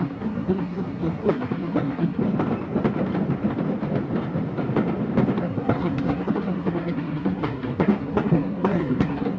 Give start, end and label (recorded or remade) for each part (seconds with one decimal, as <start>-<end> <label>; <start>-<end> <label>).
0.0-2.2 remade; 2.2-5.4 recorded; 5.4-9.4 remade